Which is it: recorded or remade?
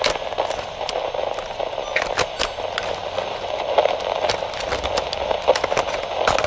recorded